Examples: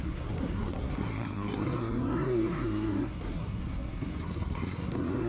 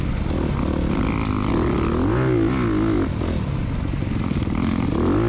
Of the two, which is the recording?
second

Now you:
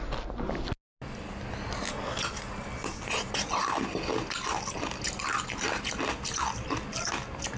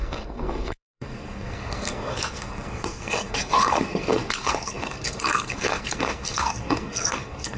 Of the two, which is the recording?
first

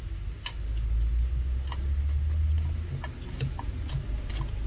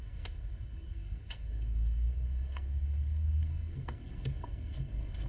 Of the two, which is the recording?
first